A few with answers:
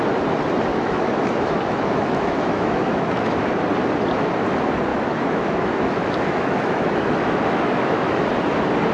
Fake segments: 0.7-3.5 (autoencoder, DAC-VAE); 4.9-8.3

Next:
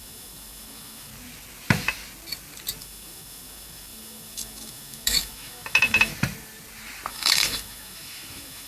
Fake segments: 0.0-1.1 (autoencoder, DAC-VAE); 2.8-6.1; 7.1-8.7

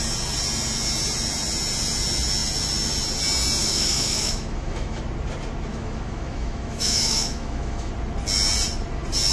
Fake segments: 3.6-5.0 (autoencoder, DAC-VAE); 5.7-7.9

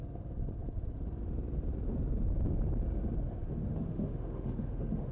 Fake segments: 3.6-5.1 (autoencoder, DAC-VAE)

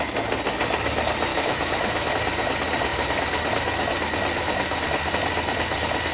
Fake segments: 1.3-2.1 (autoencoder, DAC-VAE)